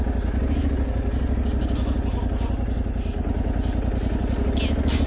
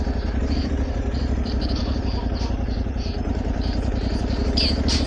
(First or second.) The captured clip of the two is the first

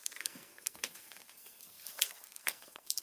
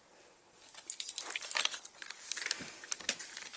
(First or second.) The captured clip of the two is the second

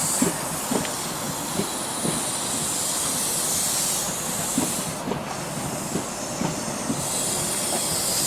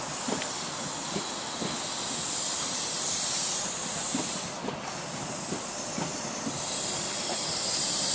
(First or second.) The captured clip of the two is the first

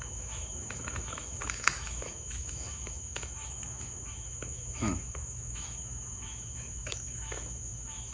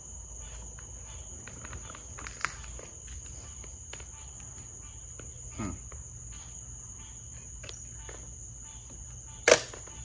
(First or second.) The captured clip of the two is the second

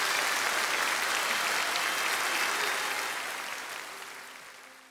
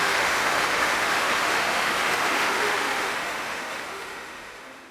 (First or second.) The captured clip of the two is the first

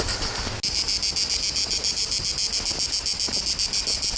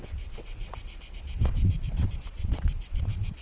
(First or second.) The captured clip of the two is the first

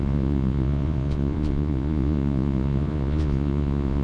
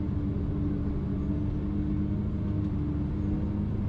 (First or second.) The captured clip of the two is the second